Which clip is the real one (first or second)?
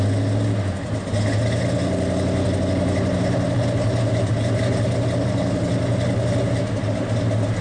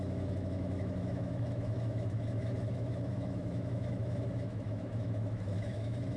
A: first